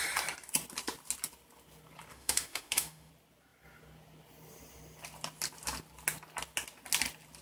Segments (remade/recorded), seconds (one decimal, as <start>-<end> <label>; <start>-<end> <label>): 0.0-2.1 recorded; 2.1-3.1 remade; 3.1-7.4 recorded